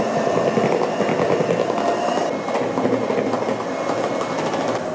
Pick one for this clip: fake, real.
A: real